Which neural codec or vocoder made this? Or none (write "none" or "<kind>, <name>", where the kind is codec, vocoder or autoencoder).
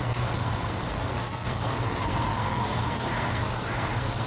codec, SNAC